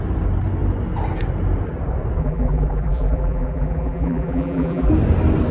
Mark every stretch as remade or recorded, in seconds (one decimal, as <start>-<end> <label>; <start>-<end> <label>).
0.0-2.2 recorded; 2.2-4.9 remade; 4.9-5.5 recorded